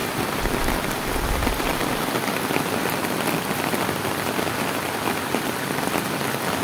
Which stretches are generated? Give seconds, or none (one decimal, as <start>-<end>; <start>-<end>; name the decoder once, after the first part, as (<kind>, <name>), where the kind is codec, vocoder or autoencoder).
0.0-1.8 (vocoder, BigVGAN v2)